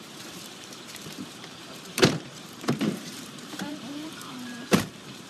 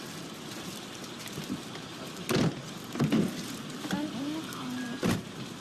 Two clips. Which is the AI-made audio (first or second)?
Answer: first